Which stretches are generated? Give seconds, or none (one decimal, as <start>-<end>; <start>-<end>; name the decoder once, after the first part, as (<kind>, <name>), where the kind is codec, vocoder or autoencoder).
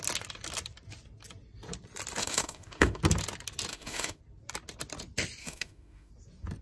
2.2-3.0 (autoencoder, DAC-VAE); 3.7-4.2; 5.4-6.1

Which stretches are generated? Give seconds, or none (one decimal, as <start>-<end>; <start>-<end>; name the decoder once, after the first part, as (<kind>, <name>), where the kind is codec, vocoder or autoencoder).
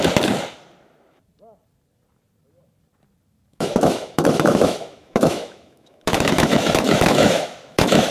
3.5-8.1 (autoencoder, DAC-VAE)